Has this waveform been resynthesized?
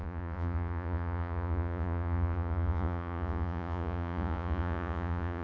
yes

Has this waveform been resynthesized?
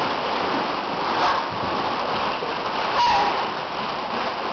no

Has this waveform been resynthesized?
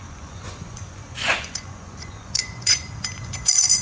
yes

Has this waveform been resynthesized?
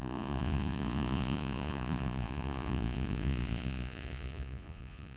yes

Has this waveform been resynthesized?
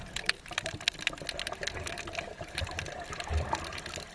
no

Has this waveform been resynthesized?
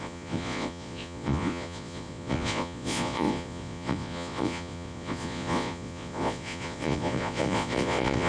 yes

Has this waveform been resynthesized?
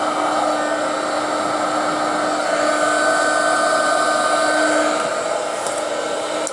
no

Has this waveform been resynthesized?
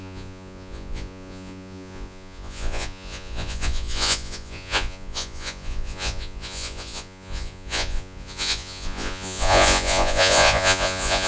yes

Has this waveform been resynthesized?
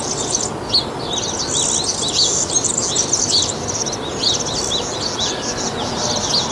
no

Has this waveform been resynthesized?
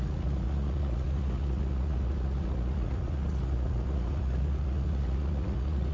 yes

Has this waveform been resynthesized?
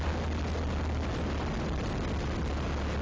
no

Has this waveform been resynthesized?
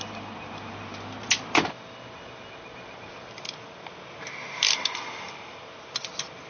no